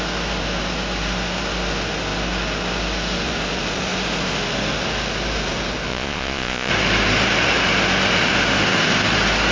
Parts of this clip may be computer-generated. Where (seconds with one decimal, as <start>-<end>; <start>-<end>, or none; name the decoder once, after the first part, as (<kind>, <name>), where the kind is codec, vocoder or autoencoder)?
5.9-6.7 (vocoder, Vocos)